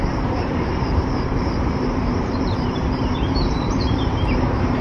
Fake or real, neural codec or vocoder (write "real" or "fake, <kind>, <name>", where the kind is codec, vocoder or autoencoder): fake, vocoder, BigVGAN v2